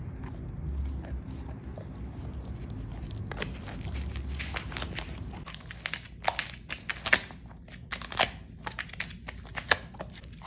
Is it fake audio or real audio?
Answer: real